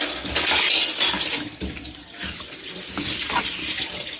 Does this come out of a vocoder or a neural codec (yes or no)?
no